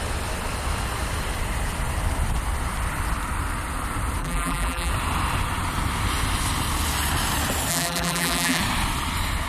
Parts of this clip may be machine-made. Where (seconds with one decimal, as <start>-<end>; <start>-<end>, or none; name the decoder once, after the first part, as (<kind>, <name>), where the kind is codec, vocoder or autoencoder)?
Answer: 4.2-4.9 (vocoder, BigVGAN v2); 7.7-8.6